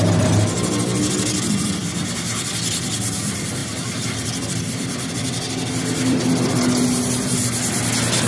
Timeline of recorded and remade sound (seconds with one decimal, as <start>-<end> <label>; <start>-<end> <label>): 0.0-1.8 recorded; 1.8-2.5 remade; 2.5-3.6 recorded; 3.6-5.1 remade; 5.1-5.8 recorded; 5.8-6.6 remade; 6.6-8.3 recorded